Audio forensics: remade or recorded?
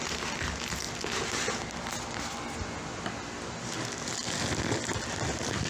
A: recorded